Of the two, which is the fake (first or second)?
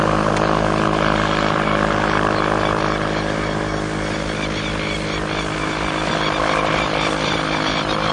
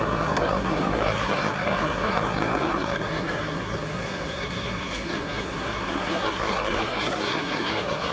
second